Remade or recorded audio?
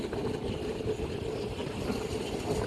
recorded